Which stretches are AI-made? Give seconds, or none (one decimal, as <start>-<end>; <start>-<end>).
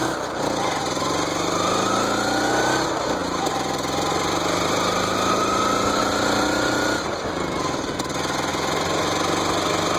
none